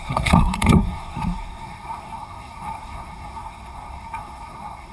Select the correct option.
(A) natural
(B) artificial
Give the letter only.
B